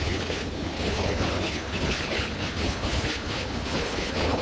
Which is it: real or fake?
fake